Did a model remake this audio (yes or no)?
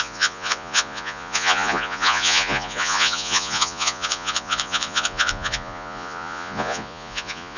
yes